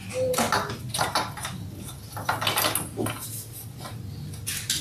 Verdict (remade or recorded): recorded